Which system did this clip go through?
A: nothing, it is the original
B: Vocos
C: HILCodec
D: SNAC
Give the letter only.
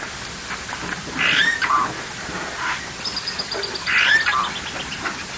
A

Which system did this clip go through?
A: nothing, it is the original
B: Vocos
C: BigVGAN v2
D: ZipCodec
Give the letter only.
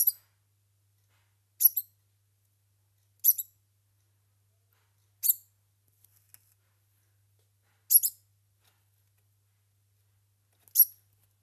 A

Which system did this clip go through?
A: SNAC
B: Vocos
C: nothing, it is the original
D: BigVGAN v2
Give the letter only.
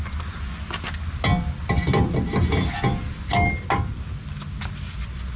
C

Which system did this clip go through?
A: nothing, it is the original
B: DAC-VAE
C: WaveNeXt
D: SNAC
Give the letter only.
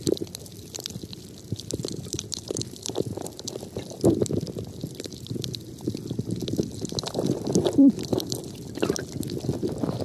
A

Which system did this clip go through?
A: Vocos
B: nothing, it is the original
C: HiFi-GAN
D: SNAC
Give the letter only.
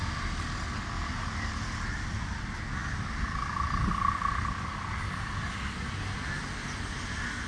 B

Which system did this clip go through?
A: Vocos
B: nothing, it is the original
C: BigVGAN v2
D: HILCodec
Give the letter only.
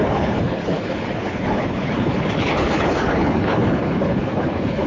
D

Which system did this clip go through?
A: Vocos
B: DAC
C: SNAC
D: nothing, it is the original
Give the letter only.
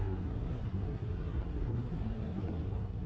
C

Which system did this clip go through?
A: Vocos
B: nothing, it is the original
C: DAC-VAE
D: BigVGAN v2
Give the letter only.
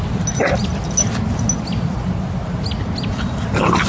B